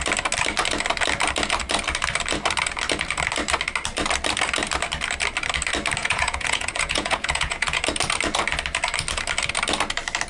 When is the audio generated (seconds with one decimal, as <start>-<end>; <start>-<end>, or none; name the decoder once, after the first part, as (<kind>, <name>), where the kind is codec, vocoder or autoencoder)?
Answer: 6.0-7.8 (vocoder, Vocos)